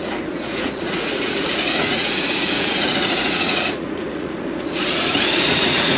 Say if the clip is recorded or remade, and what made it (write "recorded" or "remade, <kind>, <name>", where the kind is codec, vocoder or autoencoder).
remade, vocoder, Vocos